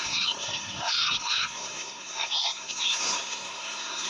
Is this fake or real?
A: fake